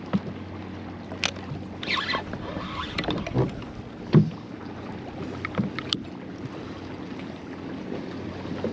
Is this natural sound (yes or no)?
yes